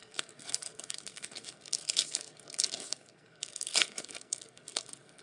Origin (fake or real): fake